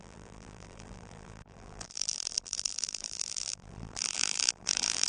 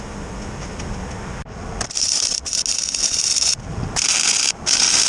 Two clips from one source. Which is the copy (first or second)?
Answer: first